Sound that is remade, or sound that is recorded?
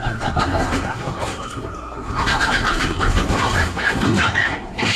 remade